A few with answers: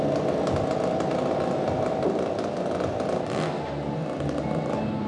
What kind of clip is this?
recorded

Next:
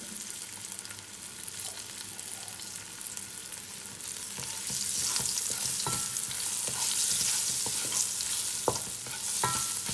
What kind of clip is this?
recorded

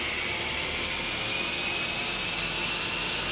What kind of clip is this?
recorded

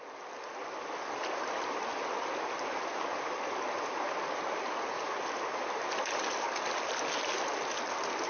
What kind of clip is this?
recorded